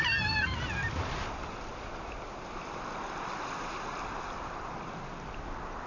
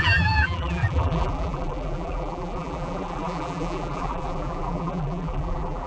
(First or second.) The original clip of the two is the first